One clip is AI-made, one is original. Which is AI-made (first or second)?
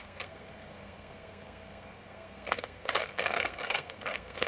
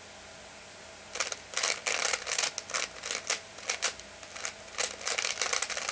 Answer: first